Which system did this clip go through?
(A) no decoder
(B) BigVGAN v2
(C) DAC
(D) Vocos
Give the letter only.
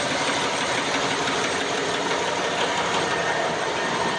B